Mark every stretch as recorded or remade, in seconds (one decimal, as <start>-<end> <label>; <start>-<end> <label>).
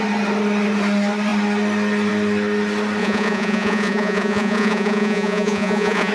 0.0-3.0 recorded; 3.0-6.1 remade